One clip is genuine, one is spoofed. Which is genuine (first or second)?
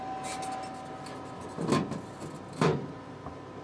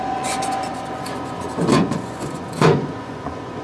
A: first